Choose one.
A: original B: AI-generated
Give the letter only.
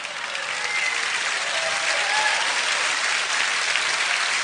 A